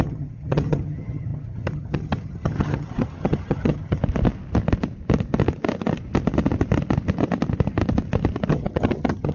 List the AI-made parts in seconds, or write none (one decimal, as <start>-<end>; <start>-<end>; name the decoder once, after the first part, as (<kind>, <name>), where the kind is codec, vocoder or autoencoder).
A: 0.0-4.0 (vocoder, HiFi-GAN); 8.5-9.3